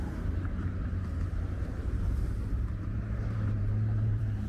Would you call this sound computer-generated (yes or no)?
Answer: yes